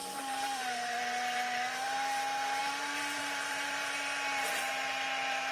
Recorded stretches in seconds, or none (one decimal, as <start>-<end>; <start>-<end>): 1.0-2.6; 4.7-5.5